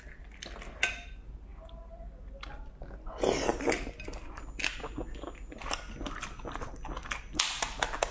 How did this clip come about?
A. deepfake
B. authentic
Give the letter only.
B